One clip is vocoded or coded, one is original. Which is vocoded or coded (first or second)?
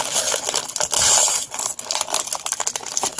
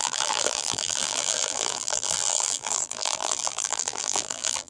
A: second